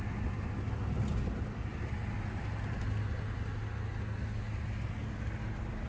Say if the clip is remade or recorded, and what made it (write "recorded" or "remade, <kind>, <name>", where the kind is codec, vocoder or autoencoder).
recorded